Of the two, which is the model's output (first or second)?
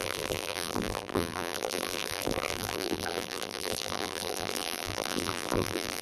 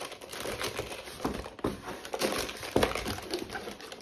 first